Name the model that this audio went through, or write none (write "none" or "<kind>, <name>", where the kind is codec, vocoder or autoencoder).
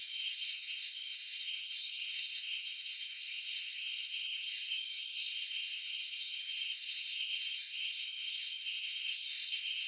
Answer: codec, SNAC